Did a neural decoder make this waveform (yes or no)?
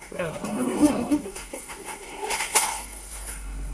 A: yes